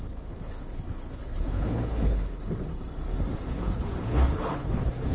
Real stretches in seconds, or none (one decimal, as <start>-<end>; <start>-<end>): 2.4-3.5